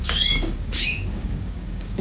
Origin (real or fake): fake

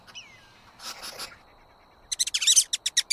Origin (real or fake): real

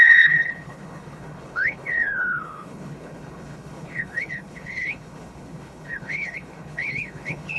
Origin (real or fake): fake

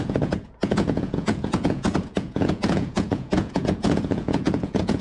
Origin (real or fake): fake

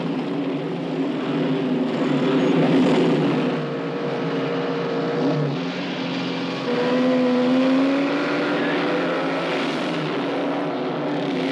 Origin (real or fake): real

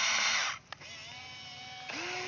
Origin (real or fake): real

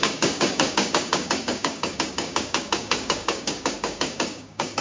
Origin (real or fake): fake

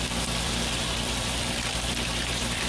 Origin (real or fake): fake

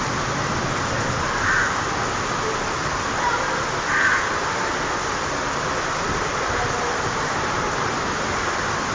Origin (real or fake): real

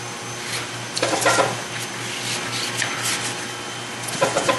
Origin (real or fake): real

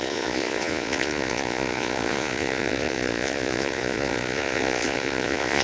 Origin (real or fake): fake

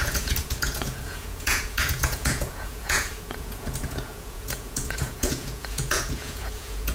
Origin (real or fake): fake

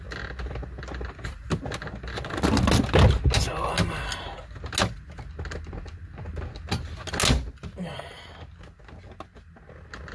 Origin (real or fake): real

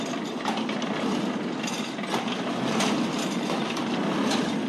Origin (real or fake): real